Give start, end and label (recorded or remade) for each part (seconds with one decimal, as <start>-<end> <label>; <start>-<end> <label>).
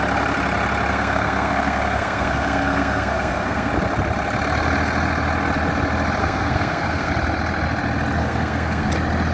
0.0-0.9 recorded; 0.9-3.7 remade; 3.7-6.2 recorded; 6.2-7.1 remade; 7.1-8.2 recorded; 8.2-8.9 remade; 8.9-9.3 recorded